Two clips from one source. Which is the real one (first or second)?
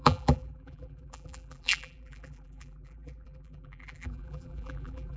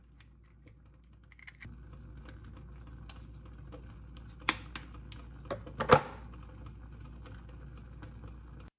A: second